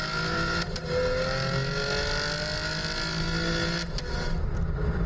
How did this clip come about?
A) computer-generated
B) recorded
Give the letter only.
B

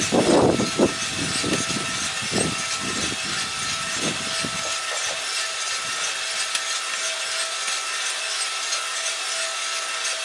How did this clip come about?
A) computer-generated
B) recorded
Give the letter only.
B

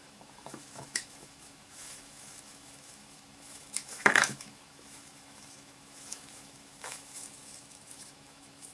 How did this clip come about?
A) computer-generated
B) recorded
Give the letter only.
A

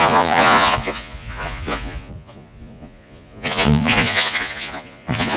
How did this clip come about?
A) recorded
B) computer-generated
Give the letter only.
B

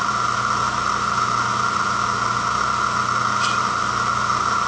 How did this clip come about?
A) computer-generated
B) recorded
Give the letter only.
B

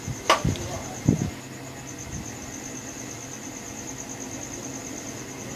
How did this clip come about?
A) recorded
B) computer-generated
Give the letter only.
A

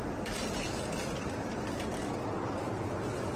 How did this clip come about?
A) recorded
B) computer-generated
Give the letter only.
A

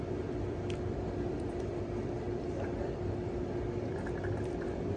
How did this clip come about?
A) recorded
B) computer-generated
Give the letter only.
B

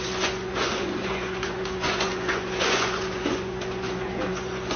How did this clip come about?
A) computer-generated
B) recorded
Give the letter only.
A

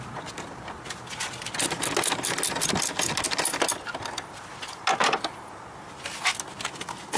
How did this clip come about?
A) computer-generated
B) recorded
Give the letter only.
B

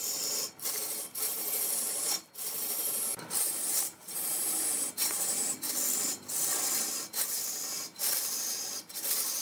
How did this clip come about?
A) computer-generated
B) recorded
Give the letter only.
A